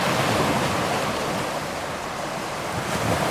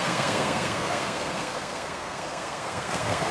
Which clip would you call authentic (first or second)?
first